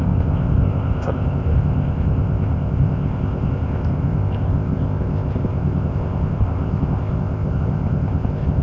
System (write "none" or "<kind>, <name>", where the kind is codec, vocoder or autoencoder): codec, ZipCodec